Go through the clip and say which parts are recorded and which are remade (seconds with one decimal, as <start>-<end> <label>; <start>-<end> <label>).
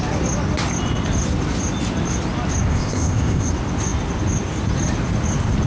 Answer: 0.0-2.7 recorded; 2.7-3.5 remade; 3.5-5.7 recorded